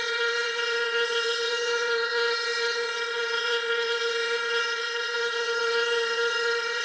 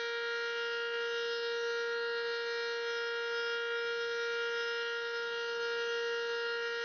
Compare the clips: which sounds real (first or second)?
second